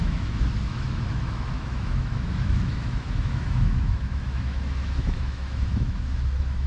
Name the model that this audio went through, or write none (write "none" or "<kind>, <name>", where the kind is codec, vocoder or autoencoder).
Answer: autoencoder, DAC-VAE